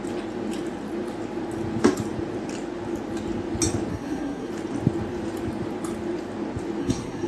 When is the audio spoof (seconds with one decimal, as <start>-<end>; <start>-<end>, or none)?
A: 3.9-4.5; 6.8-7.3